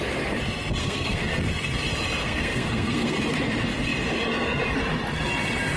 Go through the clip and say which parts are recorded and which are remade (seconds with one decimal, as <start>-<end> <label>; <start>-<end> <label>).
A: 0.0-0.8 recorded; 0.8-1.3 remade; 1.3-2.2 recorded; 2.2-3.2 remade; 3.2-5.8 recorded